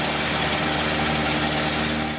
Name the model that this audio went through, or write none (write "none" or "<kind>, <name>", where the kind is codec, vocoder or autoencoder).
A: none